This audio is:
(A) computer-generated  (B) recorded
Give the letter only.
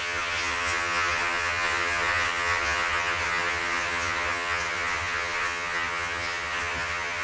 A